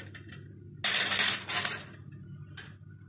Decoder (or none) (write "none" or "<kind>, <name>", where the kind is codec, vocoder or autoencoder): none